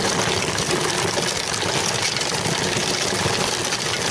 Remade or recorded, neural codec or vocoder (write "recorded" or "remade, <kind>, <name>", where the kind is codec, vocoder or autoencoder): recorded